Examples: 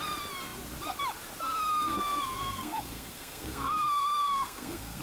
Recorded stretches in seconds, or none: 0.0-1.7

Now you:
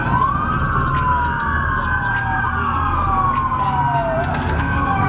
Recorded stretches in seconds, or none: 0.0-4.3

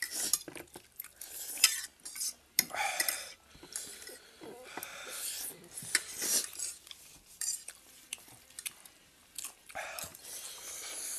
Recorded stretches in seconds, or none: 0.0-11.2

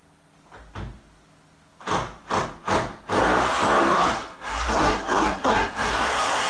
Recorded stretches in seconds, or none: 0.0-3.9

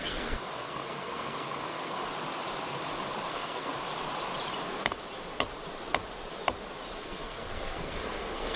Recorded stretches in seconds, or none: 2.0-3.3; 3.7-7.0